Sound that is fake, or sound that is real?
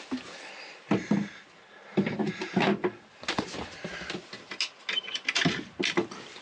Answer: real